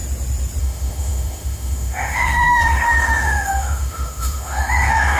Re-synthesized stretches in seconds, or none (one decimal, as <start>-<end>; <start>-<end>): 0.6-5.2